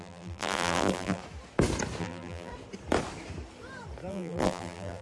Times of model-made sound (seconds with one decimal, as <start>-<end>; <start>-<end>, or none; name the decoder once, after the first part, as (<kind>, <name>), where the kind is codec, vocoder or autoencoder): 0.0-1.2 (vocoder, BigVGAN v2); 2.0-2.5; 4.1-5.0